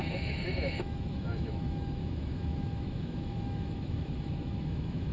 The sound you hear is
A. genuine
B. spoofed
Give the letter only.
B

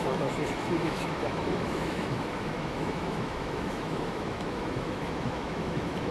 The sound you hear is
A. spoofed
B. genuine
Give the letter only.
A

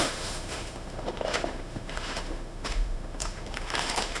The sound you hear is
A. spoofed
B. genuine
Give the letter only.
A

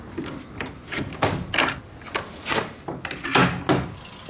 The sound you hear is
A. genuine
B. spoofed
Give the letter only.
A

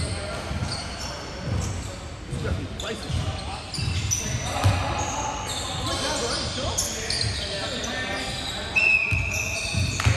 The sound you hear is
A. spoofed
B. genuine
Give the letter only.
B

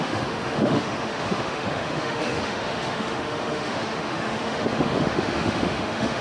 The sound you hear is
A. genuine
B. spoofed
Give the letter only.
B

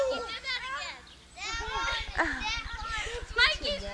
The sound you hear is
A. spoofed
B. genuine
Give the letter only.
B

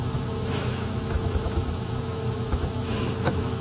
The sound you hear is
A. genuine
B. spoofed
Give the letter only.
B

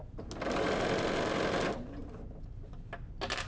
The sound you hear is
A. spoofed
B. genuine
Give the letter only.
B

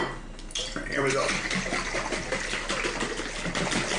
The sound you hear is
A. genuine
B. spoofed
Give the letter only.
A